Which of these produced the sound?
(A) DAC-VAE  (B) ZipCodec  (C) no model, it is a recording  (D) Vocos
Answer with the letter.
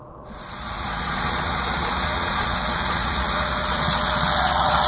D